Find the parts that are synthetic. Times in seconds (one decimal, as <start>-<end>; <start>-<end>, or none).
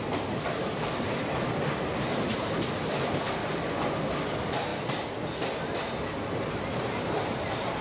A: 3.4-4.0